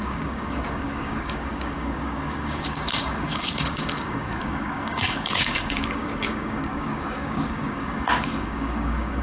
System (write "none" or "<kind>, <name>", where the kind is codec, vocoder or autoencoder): codec, DAC